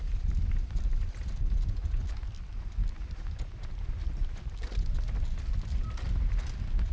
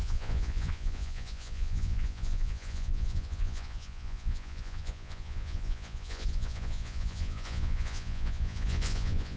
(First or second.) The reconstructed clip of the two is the second